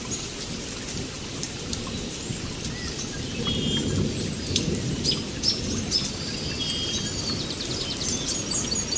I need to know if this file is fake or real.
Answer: real